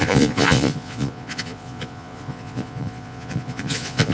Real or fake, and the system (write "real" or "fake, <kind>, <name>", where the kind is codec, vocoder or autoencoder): fake, vocoder, Vocos